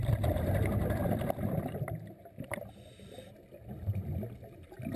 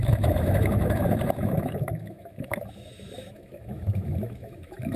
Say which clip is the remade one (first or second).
second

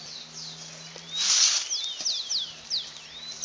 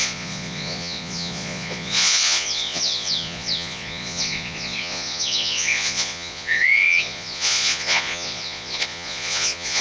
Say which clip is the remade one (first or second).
second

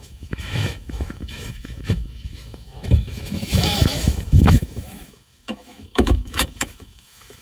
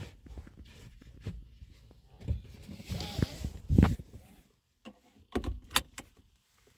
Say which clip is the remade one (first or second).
first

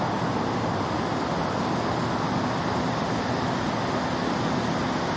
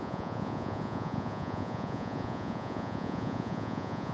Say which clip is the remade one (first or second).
second